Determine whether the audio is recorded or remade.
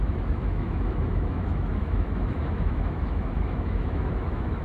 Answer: remade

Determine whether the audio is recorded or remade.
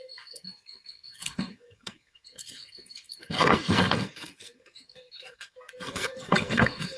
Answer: remade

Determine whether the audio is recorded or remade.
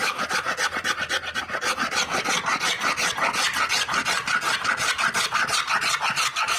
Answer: recorded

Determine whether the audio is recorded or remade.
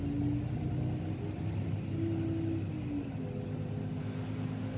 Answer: recorded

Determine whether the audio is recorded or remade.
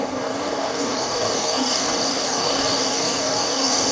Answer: remade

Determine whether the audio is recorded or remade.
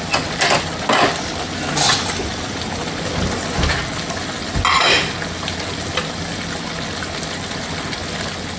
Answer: recorded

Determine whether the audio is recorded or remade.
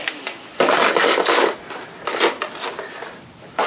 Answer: recorded